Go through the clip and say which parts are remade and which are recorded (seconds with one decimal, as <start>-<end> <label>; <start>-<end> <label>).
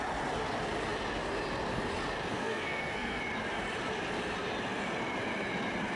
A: 0.0-2.3 recorded; 2.3-3.2 remade; 3.2-6.0 recorded